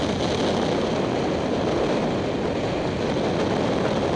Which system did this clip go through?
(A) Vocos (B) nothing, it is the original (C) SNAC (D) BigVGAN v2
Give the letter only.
B